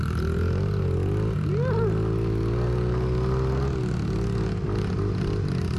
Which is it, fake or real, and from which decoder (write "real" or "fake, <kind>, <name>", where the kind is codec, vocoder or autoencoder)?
real